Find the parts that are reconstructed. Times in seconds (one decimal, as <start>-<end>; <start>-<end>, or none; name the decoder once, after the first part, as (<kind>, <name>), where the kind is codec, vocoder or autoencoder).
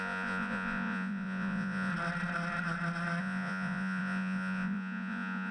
0.0-1.9 (vocoder, Vocos); 3.2-5.5